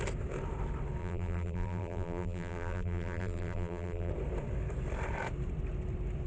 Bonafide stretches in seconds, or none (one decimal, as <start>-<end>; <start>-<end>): 0.0-1.0; 4.1-6.3